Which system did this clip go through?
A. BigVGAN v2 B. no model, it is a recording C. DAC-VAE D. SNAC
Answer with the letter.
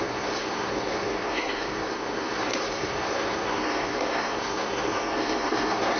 D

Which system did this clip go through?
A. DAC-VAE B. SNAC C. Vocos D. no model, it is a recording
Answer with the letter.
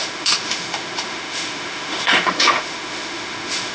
A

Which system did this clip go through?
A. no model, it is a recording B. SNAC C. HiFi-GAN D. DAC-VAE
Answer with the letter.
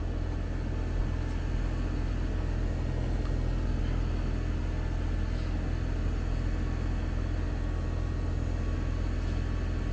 A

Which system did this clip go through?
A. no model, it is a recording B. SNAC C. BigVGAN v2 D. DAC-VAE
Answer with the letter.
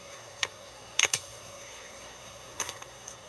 B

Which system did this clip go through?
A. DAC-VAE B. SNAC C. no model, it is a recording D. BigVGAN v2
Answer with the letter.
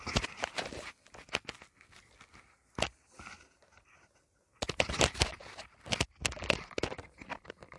C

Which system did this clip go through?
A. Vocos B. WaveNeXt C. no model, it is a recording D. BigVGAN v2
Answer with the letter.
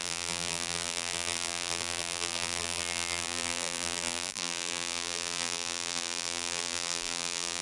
D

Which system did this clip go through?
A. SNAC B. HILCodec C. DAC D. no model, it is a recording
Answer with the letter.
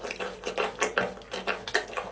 D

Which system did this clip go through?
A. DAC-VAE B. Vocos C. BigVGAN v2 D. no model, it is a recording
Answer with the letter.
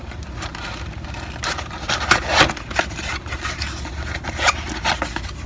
D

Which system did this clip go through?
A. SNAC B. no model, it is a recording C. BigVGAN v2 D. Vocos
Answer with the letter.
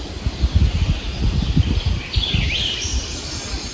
C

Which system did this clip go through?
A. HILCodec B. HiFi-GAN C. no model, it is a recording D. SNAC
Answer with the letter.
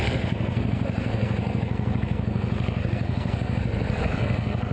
D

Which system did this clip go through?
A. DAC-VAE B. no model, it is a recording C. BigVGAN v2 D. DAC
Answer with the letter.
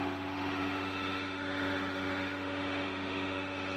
A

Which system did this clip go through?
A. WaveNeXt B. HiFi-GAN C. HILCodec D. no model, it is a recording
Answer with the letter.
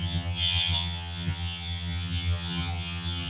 B